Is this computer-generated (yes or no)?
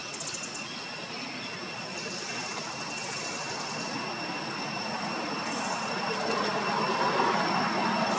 no